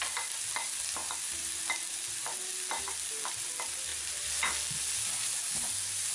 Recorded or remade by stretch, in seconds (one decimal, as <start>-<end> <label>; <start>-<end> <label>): 0.0-6.1 recorded